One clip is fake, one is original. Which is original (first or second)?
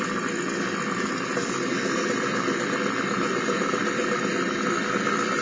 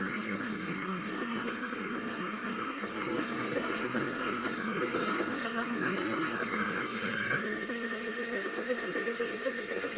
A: first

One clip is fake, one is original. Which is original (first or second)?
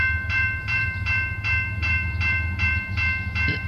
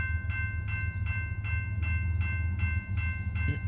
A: second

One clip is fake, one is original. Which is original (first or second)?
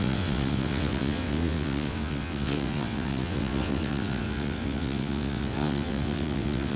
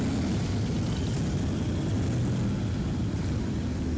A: second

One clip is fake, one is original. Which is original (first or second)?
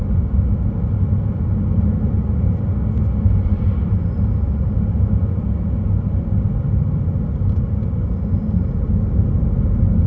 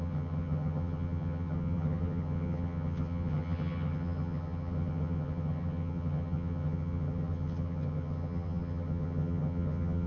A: first